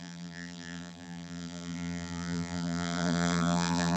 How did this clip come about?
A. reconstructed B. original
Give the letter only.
A